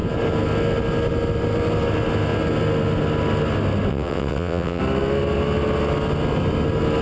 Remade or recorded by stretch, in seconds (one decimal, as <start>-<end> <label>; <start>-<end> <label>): 0.0-3.9 recorded; 3.9-4.8 remade; 4.8-7.0 recorded